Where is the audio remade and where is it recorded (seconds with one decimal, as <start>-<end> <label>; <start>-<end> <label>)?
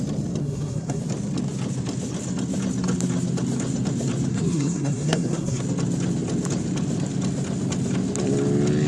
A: 0.0-0.4 recorded; 0.4-1.0 remade; 1.0-4.3 recorded; 4.3-5.6 remade; 5.6-8.9 recorded